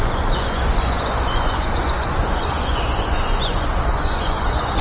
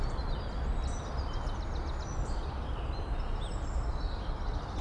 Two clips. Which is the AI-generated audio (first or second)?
first